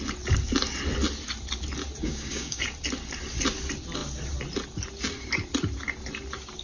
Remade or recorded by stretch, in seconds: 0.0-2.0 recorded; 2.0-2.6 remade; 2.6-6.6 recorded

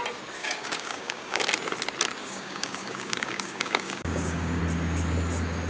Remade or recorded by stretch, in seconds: 0.0-0.4 recorded; 0.4-1.4 remade; 1.4-2.2 recorded; 2.2-4.6 remade; 4.6-5.7 recorded

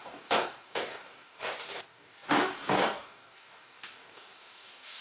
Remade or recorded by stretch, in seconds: 0.0-5.0 remade

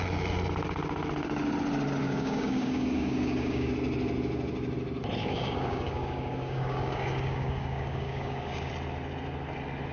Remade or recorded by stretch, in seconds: 0.0-2.0 recorded; 2.0-3.7 remade; 3.7-5.2 recorded; 5.2-8.7 remade; 8.7-9.9 recorded

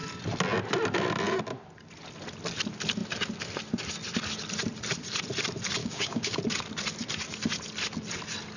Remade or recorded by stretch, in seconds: 0.0-5.8 recorded; 5.8-6.4 remade; 6.4-8.6 recorded